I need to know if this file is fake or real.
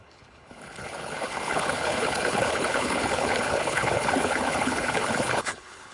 fake